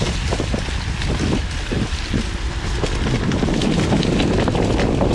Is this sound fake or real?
real